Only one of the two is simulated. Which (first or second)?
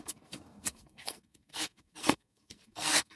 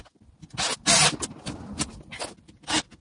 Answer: first